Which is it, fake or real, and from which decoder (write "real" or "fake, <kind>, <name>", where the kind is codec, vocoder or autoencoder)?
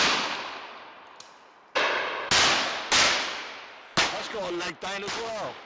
real